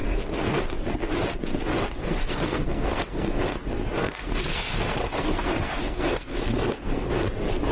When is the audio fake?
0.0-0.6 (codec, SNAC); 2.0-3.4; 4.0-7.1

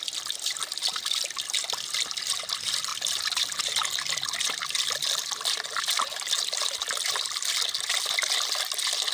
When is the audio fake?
none

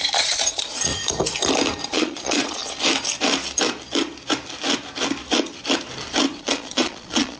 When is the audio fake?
0.0-0.9 (vocoder, Vocos); 1.9-2.6; 6.4-7.4

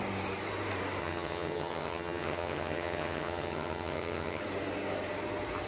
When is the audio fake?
1.0-4.4 (vocoder, HiFi-GAN)